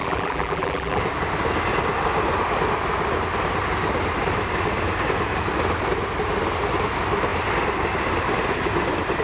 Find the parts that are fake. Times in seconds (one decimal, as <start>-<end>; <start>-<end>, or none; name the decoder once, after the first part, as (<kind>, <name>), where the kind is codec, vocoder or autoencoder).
0.0-1.0 (vocoder, BigVGAN v2)

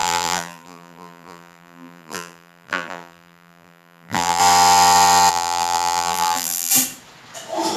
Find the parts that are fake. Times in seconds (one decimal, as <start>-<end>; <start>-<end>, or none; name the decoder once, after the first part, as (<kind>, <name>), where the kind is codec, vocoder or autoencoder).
0.0-4.4 (vocoder, BigVGAN v2); 5.3-6.7

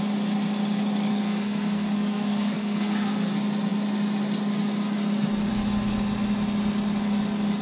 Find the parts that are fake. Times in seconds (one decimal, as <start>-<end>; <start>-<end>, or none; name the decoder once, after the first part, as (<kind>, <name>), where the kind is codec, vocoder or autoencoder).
1.1-3.3 (codec, SNAC)

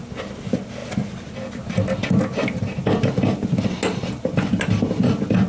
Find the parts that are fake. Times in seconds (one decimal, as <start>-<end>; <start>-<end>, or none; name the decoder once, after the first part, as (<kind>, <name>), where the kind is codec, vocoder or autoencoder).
none

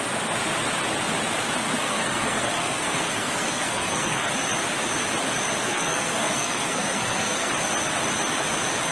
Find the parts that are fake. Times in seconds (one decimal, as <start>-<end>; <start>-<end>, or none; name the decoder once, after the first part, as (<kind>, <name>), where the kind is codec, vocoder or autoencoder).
1.8-4.3 (codec, SNAC); 5.6-7.5